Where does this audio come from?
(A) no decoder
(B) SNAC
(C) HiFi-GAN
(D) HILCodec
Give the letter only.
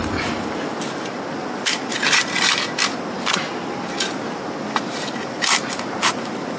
A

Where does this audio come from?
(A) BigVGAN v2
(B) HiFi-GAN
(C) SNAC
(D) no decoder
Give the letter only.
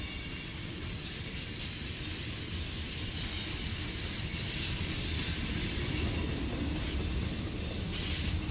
D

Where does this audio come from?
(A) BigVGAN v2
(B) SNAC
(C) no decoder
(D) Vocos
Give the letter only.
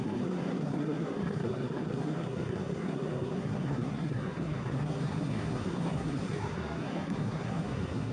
B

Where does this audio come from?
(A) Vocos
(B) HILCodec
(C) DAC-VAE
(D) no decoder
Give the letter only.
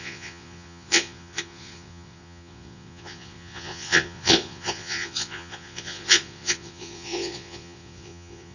A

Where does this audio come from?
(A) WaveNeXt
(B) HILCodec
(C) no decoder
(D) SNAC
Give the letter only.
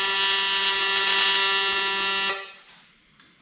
C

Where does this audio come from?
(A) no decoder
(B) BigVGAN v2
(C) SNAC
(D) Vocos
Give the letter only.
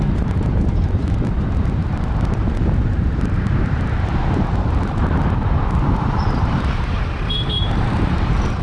B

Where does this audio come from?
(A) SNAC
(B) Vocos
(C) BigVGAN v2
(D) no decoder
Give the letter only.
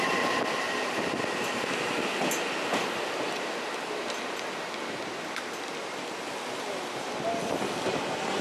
D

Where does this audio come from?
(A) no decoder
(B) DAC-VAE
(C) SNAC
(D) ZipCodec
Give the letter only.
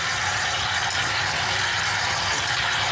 A